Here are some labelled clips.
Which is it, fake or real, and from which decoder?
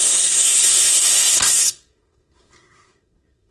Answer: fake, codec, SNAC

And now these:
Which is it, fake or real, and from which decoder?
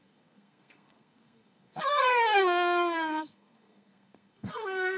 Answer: fake, codec, SNAC